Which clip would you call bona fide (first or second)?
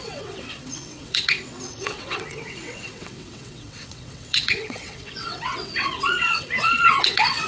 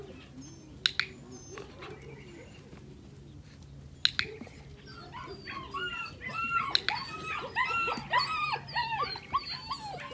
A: second